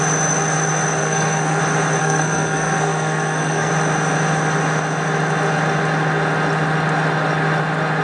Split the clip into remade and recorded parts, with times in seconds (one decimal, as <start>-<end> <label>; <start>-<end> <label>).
0.0-1.0 recorded; 1.0-1.6 remade; 1.6-2.0 recorded; 2.0-3.7 remade; 3.7-8.0 recorded